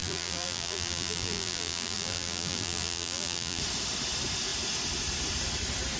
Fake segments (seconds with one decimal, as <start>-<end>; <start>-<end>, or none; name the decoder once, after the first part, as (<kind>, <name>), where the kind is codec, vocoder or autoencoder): 0.0-3.6 (vocoder, BigVGAN v2)